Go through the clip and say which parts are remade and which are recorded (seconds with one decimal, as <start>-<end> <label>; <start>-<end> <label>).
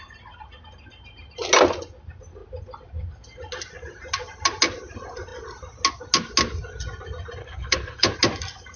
0.0-7.4 recorded; 7.4-8.1 remade; 8.1-8.8 recorded